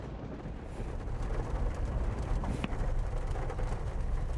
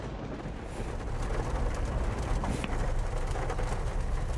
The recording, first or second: second